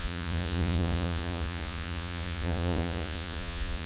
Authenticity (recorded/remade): remade